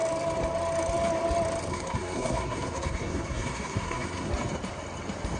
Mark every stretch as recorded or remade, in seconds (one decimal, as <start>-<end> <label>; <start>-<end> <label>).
0.0-1.7 recorded; 1.7-4.3 remade; 4.3-5.4 recorded